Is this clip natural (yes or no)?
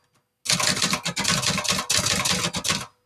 yes